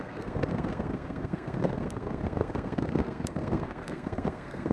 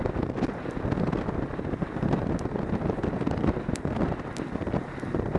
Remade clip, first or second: first